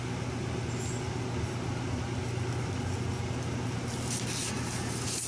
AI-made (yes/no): no